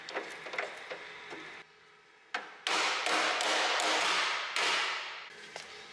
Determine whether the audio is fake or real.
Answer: real